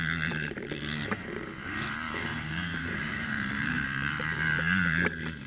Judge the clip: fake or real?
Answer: fake